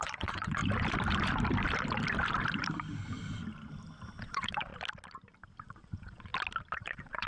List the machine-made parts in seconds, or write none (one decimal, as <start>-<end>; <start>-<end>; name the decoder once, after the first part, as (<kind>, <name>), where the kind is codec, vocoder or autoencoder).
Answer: 0.0-0.6 (vocoder, Vocos); 4.2-4.7; 5.6-6.3; 6.8-7.3